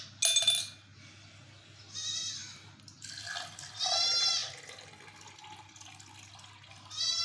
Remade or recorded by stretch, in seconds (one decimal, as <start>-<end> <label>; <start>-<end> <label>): 0.0-7.2 recorded